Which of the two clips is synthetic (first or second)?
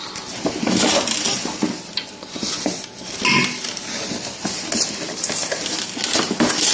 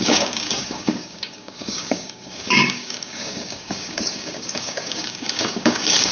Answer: second